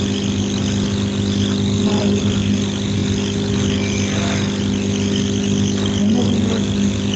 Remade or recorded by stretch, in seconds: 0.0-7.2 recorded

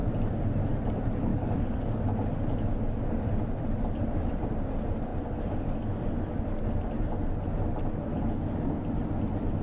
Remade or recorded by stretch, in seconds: 0.0-1.3 recorded; 1.3-2.0 remade; 2.0-9.6 recorded

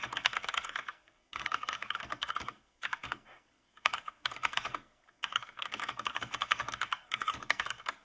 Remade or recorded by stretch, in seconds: 0.0-8.0 remade